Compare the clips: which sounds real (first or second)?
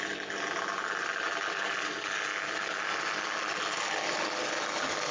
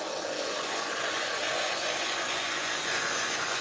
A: first